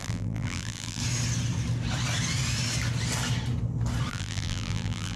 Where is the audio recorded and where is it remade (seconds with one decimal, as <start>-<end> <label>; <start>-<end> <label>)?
0.0-1.0 remade; 1.0-4.1 recorded; 4.1-5.2 remade